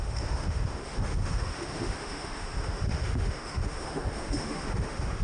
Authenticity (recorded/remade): remade